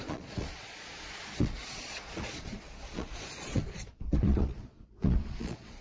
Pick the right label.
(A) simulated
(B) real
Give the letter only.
A